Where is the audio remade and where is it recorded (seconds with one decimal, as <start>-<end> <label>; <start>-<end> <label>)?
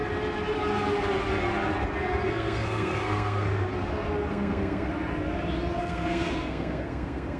0.0-2.3 recorded; 2.3-3.7 remade; 3.7-4.3 recorded; 4.3-4.9 remade; 4.9-5.8 recorded; 5.8-7.4 remade